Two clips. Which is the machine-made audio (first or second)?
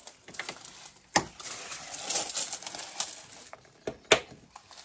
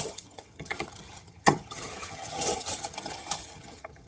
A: second